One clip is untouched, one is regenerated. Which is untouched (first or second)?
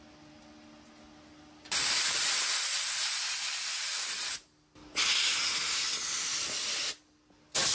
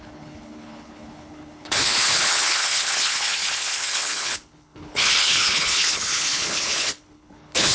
first